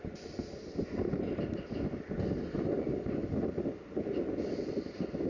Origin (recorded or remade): recorded